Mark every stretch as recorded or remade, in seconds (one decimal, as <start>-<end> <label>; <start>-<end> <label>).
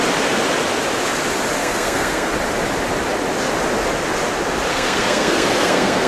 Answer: 0.0-1.6 recorded; 1.6-2.3 remade; 2.3-4.7 recorded; 4.7-6.1 remade